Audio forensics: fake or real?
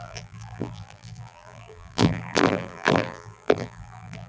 fake